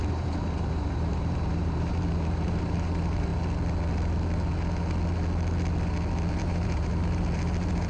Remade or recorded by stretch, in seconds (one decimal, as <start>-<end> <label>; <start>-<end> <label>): 0.0-3.3 remade; 3.3-6.4 recorded; 6.4-7.9 remade